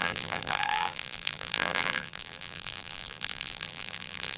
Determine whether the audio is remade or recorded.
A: remade